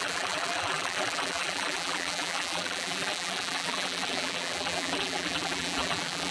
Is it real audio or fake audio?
fake